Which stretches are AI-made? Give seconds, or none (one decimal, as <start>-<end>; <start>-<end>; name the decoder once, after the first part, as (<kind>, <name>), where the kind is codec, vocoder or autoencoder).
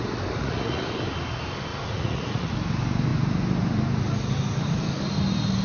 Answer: 0.4-1.0 (vocoder, Vocos); 1.7-2.5